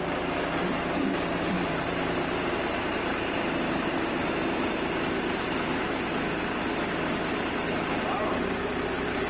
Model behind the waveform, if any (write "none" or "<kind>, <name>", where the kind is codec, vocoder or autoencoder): vocoder, BigVGAN v2